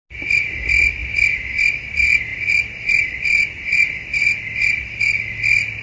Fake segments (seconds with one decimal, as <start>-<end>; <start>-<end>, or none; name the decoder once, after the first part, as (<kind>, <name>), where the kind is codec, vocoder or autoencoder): none